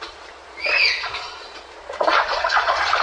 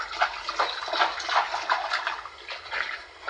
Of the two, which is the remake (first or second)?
first